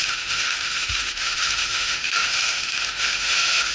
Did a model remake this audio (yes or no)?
yes